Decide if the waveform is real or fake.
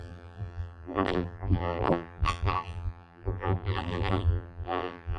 fake